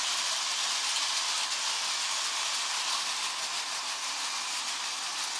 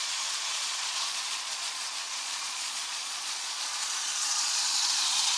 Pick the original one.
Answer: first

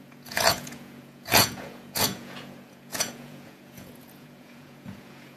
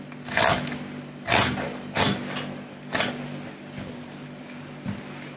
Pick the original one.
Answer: second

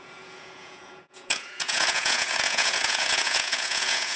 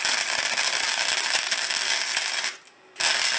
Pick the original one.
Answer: second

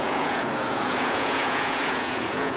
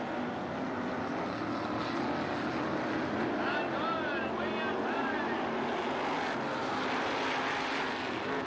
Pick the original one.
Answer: second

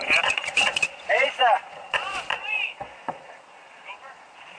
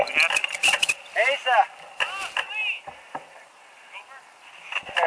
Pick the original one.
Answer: second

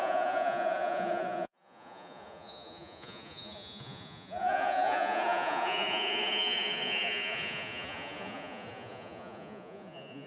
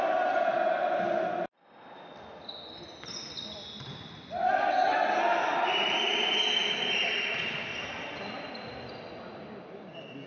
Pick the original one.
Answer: second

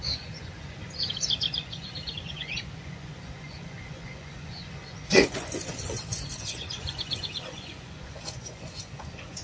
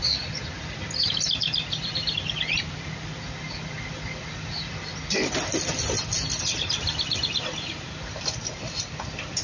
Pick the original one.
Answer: second